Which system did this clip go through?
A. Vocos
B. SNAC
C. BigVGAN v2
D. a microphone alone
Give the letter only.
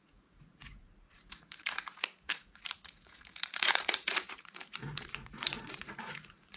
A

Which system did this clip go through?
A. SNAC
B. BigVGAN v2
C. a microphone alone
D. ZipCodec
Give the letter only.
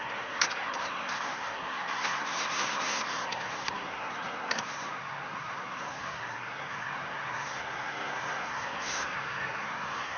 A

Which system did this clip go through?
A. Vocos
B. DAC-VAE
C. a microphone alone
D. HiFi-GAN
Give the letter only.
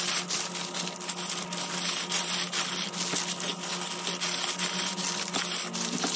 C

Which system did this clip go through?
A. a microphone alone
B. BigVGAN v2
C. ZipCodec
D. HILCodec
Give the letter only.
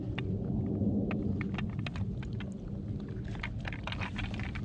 A